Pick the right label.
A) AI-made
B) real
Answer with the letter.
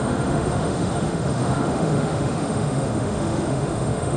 A